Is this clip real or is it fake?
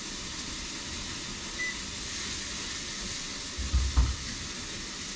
real